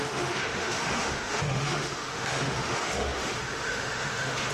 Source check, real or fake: fake